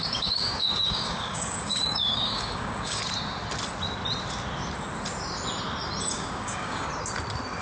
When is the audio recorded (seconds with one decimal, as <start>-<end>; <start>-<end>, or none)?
3.0-6.1; 6.9-7.6

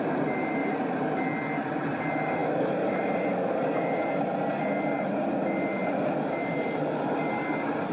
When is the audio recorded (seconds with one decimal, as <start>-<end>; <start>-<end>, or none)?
0.0-0.6; 1.2-2.4; 4.0-7.9

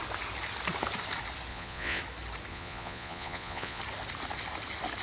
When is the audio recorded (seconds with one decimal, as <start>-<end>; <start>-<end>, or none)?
0.0-1.5; 2.0-2.5; 3.8-5.0